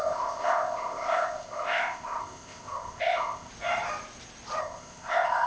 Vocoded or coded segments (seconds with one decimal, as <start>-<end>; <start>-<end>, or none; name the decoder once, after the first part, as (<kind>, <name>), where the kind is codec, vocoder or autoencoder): 0.0-3.5 (codec, ZipCodec); 4.6-5.5